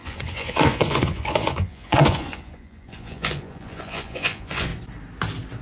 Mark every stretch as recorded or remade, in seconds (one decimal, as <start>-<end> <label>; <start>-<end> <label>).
0.0-4.7 remade; 4.7-5.6 recorded